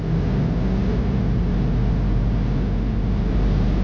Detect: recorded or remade recorded